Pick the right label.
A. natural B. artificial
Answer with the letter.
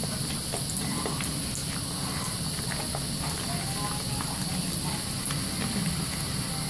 A